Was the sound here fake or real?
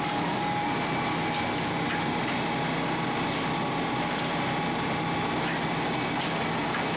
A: real